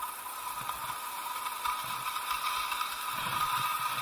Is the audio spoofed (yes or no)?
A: no